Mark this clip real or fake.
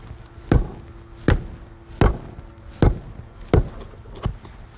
real